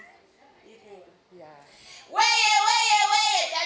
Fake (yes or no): no